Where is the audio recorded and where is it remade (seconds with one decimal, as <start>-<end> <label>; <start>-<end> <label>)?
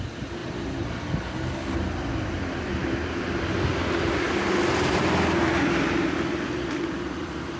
0.0-7.6 recorded